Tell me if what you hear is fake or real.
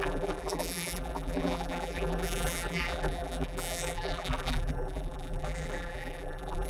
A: fake